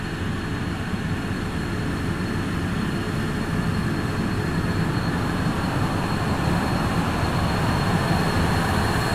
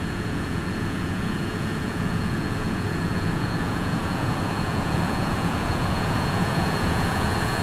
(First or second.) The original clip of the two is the first